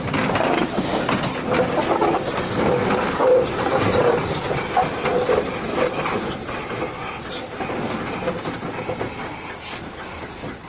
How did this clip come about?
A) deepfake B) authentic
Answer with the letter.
B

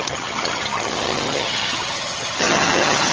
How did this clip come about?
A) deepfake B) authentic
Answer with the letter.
A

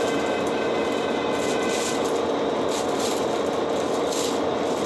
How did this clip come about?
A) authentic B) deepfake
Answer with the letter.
A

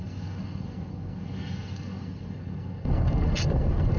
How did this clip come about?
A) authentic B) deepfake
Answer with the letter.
B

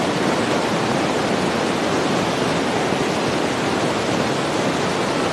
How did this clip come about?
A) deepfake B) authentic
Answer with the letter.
B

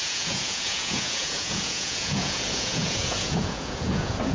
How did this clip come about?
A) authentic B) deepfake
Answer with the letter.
B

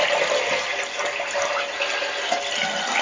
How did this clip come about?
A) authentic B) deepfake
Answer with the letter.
A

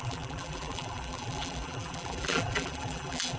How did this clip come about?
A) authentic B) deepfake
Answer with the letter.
B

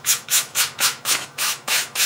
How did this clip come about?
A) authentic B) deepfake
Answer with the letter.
B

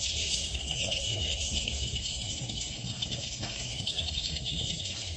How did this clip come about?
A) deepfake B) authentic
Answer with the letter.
A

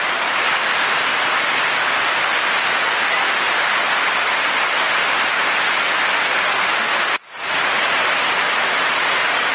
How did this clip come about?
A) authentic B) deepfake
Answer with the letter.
A